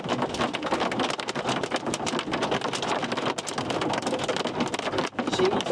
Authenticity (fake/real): real